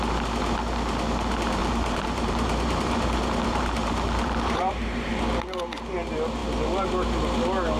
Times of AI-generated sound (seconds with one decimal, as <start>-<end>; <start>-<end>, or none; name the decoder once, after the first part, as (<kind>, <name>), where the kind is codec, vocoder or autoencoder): 1.6-5.1 (vocoder, BigVGAN v2)